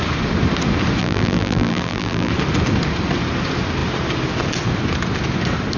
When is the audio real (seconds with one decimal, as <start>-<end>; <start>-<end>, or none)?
0.0-1.0; 2.3-5.8